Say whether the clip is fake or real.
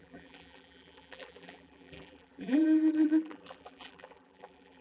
fake